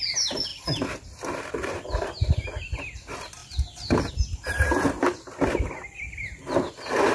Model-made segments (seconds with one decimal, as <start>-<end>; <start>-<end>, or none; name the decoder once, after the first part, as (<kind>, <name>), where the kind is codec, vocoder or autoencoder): none